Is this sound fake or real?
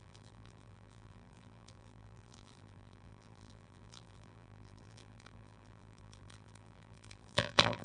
fake